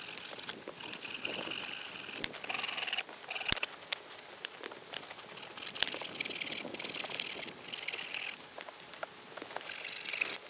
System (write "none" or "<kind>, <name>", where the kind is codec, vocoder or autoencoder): none